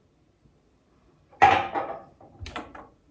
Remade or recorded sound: recorded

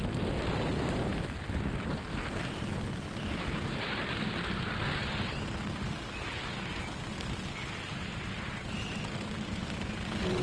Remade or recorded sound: recorded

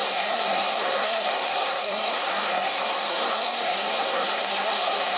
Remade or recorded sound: remade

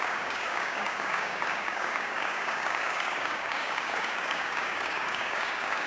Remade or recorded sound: remade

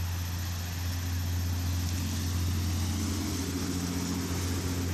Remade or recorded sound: recorded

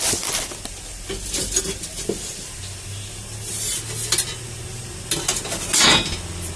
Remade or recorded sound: recorded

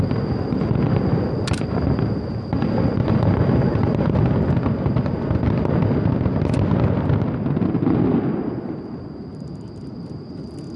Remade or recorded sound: recorded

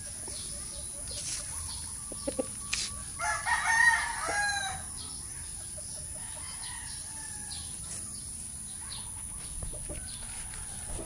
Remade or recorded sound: recorded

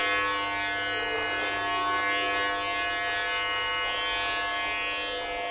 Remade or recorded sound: recorded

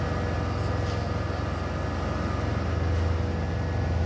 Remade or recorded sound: recorded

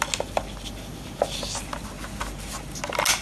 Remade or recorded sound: recorded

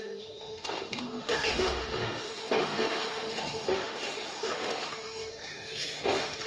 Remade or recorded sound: remade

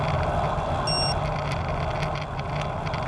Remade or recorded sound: recorded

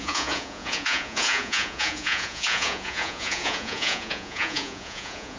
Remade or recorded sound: remade